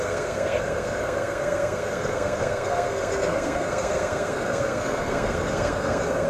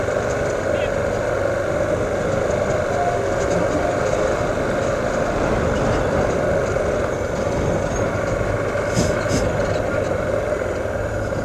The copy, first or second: first